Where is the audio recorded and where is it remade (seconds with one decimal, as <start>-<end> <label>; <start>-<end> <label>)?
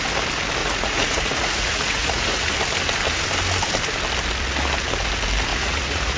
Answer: 0.0-0.6 recorded; 0.6-2.5 remade; 2.5-5.5 recorded; 5.5-6.2 remade